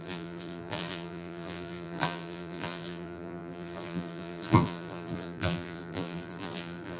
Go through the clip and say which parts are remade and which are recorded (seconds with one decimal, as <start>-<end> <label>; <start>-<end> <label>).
0.0-7.0 remade